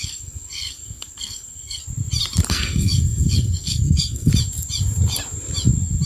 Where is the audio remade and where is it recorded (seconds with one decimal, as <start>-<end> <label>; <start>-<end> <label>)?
0.0-1.8 remade; 1.8-2.5 recorded; 2.5-4.3 remade; 4.3-6.1 recorded